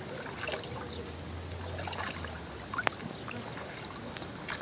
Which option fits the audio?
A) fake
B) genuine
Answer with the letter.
B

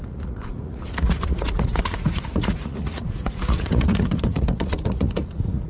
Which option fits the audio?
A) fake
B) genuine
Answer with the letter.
A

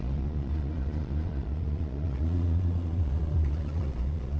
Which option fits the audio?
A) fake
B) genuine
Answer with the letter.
A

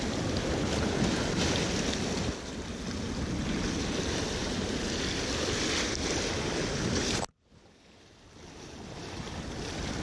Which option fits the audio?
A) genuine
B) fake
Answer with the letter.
A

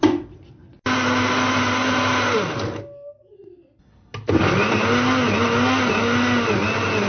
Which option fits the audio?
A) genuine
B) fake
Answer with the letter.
A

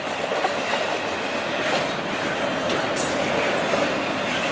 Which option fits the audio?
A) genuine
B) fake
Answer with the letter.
A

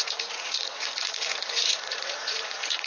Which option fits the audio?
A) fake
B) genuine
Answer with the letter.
A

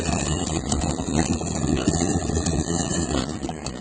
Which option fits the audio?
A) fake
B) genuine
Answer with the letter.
A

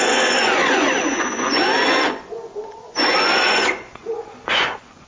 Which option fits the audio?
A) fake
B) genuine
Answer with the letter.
A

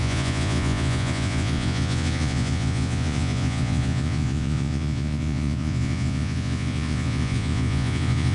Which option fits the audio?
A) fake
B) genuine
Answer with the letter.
A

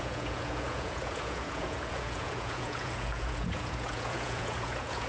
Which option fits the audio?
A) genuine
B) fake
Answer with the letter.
B